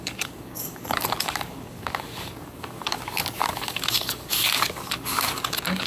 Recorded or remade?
remade